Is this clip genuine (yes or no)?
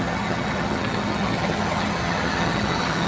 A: no